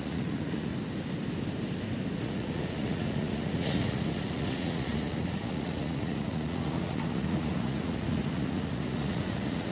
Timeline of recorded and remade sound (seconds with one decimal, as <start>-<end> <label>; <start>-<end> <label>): 0.0-0.7 remade; 0.7-2.2 recorded; 2.2-9.7 remade